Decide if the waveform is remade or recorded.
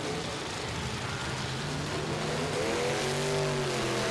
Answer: recorded